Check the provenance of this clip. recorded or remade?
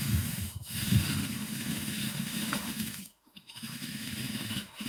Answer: remade